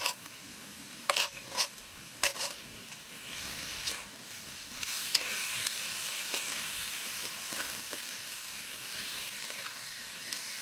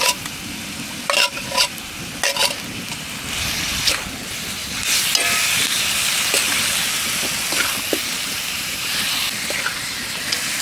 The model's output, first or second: first